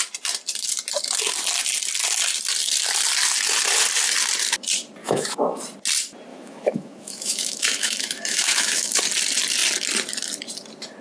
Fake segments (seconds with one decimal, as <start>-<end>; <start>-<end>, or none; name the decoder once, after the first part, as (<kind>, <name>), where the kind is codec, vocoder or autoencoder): 5.0-5.6 (autoencoder, DAC-VAE); 6.3-9.0